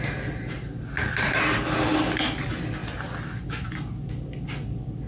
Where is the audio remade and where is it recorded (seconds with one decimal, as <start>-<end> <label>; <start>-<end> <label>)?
0.0-5.1 recorded